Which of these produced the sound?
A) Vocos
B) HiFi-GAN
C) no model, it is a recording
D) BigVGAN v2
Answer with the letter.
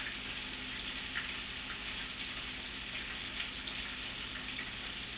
C